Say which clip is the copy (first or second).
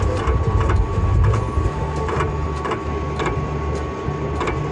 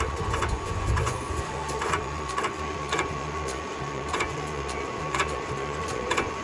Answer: second